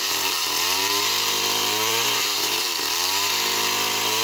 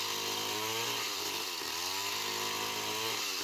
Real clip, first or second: second